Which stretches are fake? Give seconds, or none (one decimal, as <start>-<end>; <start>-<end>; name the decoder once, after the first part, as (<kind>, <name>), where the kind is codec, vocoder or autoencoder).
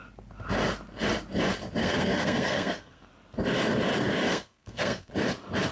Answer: 1.8-3.1 (codec, SNAC); 4.3-5.1